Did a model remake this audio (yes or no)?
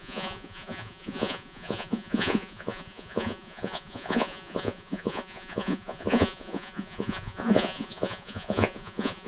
yes